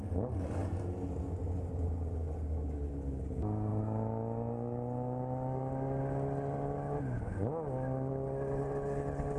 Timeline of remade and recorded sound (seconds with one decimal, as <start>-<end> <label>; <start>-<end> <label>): 0.0-9.4 recorded